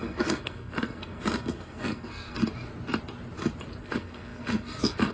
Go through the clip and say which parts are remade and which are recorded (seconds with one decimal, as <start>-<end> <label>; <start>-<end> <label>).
0.0-2.4 remade; 2.4-3.8 recorded; 3.8-5.1 remade